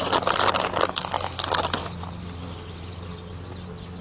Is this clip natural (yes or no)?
yes